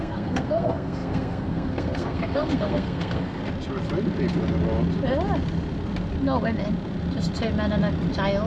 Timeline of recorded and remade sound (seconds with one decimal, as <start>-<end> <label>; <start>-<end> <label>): 0.0-3.4 remade; 3.4-8.5 recorded